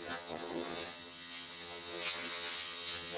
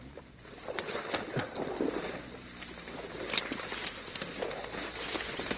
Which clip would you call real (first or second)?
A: second